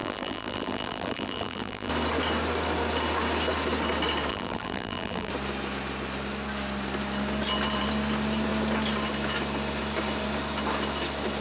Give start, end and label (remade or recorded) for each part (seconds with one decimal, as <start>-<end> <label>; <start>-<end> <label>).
0.0-1.9 remade; 1.9-4.3 recorded; 4.3-5.3 remade; 5.3-11.4 recorded